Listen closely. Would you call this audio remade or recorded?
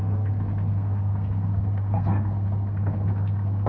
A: remade